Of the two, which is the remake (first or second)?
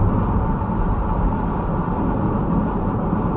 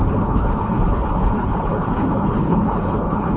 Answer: second